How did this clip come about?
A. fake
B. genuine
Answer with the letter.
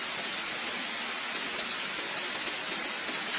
B